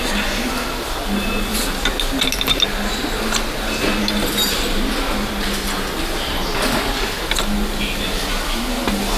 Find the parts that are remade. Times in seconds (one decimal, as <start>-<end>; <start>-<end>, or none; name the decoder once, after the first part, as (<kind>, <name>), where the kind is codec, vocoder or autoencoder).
none